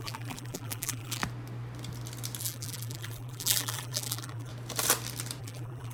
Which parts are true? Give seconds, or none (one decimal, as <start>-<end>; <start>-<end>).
1.2-2.4; 4.5-5.4